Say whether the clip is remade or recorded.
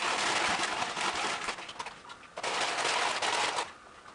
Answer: recorded